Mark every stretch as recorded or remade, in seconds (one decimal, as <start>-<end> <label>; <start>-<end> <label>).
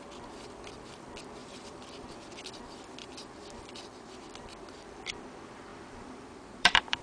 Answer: 0.0-1.4 recorded; 1.4-2.5 remade; 2.5-3.0 recorded; 3.0-3.7 remade; 3.7-5.7 recorded; 5.7-7.0 remade